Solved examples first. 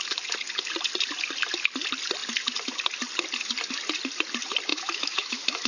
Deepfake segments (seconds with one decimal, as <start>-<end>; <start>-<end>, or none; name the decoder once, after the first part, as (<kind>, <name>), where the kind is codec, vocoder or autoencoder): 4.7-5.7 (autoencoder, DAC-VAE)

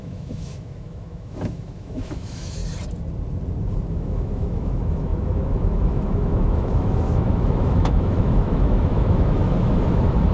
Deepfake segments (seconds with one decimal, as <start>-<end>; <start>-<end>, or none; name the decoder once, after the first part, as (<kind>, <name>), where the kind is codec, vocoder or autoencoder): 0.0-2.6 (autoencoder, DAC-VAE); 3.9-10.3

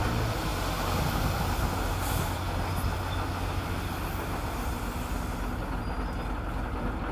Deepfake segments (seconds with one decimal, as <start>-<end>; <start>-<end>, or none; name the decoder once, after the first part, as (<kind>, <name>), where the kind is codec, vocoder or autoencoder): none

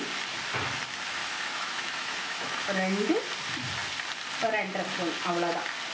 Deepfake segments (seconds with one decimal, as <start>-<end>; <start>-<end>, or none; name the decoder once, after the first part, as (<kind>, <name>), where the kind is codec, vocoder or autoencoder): 1.2-3.2 (autoencoder, DAC-VAE)